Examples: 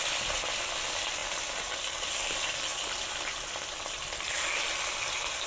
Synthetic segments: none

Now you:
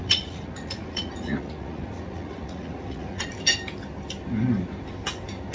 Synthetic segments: 0.0-3.3